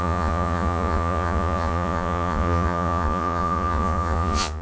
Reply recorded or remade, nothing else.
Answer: remade